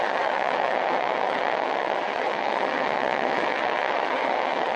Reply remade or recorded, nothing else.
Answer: remade